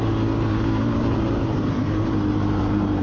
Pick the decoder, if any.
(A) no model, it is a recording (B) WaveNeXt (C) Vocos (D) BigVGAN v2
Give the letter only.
D